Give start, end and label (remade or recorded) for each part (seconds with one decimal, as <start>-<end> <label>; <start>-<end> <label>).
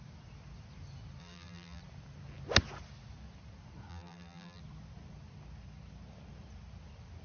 0.0-1.2 recorded; 1.2-1.8 remade; 1.8-3.9 recorded; 3.9-4.6 remade; 4.6-7.2 recorded